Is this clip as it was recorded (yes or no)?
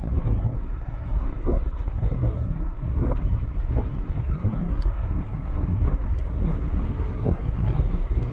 no